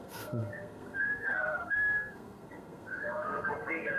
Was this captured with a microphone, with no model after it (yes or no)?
no